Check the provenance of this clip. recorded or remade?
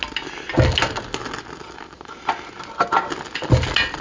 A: recorded